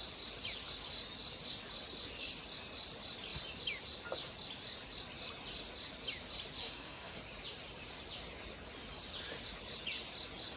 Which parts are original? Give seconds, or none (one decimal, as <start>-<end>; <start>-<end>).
0.0-6.6; 7.2-10.6